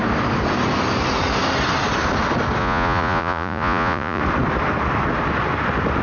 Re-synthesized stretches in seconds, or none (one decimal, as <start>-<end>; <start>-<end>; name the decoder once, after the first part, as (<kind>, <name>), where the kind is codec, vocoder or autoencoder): 2.6-4.2 (vocoder, Vocos)

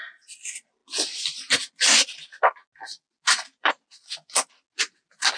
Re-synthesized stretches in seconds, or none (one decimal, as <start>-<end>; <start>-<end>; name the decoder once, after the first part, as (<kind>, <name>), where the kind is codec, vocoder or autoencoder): none

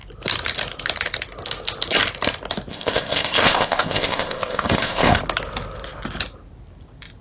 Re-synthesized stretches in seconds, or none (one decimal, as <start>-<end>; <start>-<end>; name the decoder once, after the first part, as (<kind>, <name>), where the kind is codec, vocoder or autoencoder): 2.7-5.2 (codec, ZipCodec)

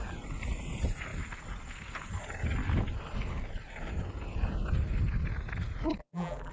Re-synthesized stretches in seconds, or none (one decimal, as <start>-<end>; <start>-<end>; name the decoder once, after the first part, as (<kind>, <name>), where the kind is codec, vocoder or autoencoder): 6.0-6.5 (vocoder, BigVGAN v2)

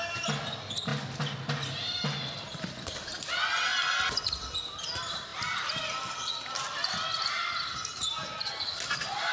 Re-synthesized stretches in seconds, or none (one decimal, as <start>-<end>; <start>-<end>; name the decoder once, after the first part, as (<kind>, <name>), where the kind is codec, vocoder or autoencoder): none